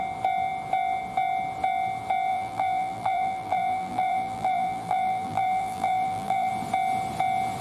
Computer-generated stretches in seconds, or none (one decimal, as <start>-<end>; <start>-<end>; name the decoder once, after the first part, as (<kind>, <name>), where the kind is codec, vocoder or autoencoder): 2.3-6.5 (vocoder, BigVGAN v2)